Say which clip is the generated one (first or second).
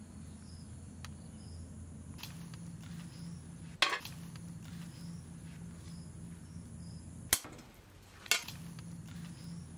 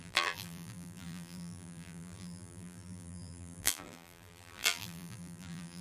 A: second